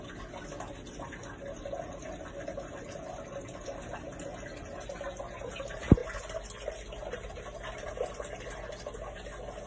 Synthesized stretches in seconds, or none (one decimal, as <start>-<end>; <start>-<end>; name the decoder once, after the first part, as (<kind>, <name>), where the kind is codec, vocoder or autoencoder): none